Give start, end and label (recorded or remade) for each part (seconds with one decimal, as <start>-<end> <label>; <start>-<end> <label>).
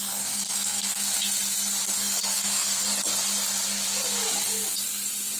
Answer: 0.0-1.1 remade; 1.1-1.9 recorded; 1.9-2.9 remade; 2.9-5.4 recorded